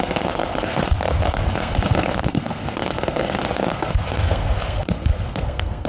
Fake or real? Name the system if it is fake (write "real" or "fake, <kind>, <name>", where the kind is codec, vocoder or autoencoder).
fake, codec, SNAC